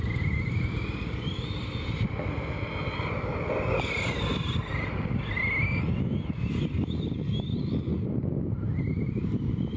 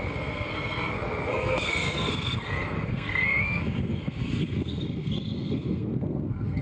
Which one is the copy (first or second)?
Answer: second